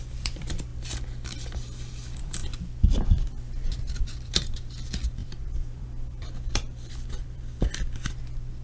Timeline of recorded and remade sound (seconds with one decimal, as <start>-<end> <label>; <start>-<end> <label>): 0.0-0.7 remade; 0.7-1.6 recorded; 1.6-2.4 remade; 2.4-4.0 recorded; 4.0-8.6 remade